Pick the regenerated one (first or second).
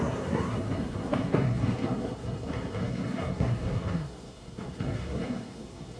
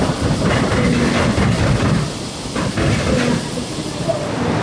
first